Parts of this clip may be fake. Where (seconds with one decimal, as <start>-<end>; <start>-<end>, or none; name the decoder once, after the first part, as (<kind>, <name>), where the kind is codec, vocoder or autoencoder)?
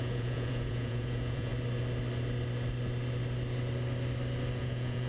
0.0-1.5 (vocoder, Vocos); 4.6-5.1